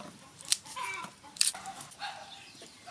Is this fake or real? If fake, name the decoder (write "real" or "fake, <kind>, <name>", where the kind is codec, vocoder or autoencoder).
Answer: fake, vocoder, BigVGAN v2